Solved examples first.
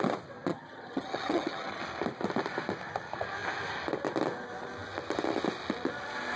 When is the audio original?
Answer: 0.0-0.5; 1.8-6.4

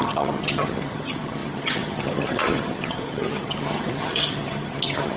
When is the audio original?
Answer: none

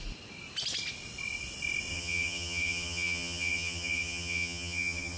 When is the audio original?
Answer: 0.0-1.9

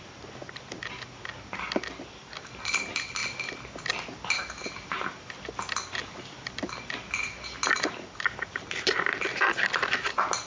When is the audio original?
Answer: 0.0-10.5

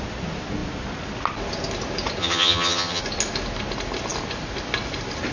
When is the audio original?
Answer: 0.0-2.2; 3.0-5.3